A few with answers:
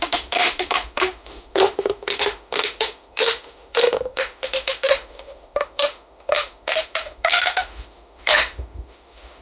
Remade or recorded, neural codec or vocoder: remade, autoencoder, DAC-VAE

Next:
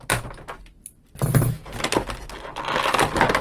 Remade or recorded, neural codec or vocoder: recorded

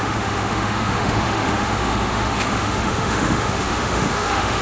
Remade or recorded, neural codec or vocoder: remade, autoencoder, DAC-VAE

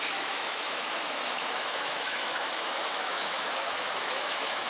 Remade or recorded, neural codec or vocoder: remade, autoencoder, DAC-VAE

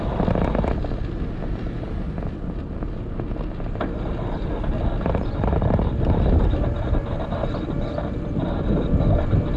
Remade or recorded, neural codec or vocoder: recorded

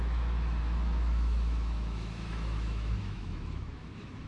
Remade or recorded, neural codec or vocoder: remade, autoencoder, DAC-VAE